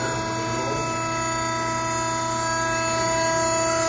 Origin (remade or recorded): recorded